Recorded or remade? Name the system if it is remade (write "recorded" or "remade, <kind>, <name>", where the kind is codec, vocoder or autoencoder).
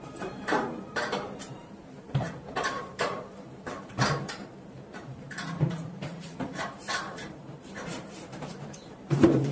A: remade, vocoder, BigVGAN v2